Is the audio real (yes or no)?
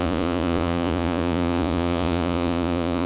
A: no